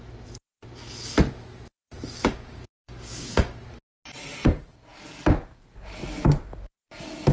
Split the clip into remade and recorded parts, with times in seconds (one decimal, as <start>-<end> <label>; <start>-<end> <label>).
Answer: 0.0-2.2 recorded; 2.2-3.6 remade; 3.6-7.3 recorded